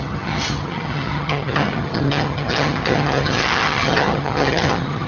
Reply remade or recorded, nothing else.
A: remade